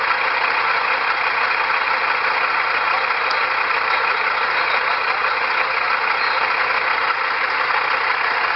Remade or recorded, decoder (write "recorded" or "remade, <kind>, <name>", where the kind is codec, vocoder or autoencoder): recorded